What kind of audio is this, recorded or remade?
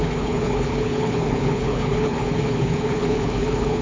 remade